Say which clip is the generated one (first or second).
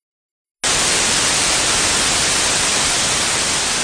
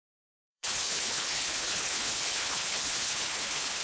second